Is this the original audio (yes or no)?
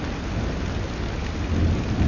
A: yes